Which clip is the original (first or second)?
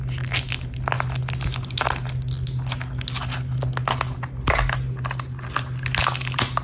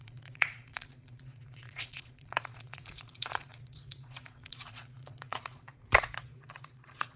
first